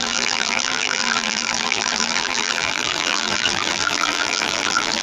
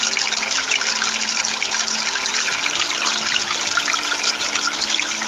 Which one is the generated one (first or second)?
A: first